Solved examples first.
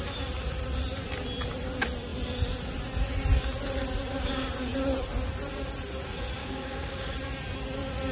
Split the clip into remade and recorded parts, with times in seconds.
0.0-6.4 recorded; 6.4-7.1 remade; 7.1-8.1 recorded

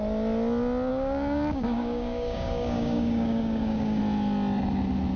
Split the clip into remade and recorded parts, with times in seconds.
0.0-0.9 recorded; 0.9-4.0 remade; 4.0-5.2 recorded

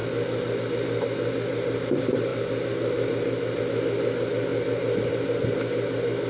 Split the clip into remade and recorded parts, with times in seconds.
0.0-6.3 recorded

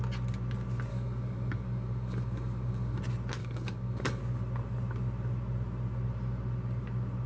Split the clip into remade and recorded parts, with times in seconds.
0.0-0.9 recorded; 0.9-3.0 remade; 3.0-3.4 recorded; 3.4-4.2 remade; 4.2-7.3 recorded

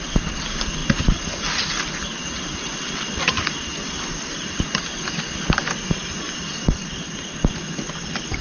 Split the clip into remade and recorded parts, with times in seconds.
0.0-8.4 recorded

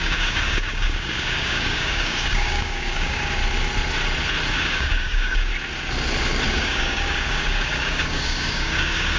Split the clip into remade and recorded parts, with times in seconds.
0.0-3.4 remade; 3.4-4.5 recorded; 4.5-5.5 remade; 5.5-6.5 recorded; 6.5-9.2 remade

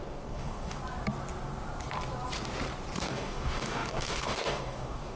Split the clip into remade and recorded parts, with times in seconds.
0.0-0.8 remade; 0.8-3.0 recorded; 3.0-5.2 remade

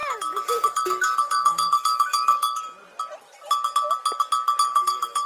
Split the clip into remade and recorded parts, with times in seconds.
0.0-2.6 remade; 2.6-4.7 recorded; 4.7-5.3 remade